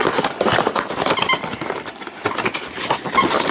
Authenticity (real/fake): real